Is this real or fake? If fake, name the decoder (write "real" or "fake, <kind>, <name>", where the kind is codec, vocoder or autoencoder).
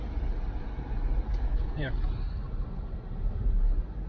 real